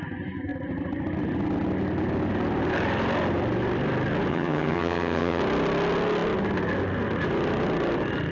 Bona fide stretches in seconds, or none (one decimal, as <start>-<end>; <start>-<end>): 0.0-4.3; 5.4-8.3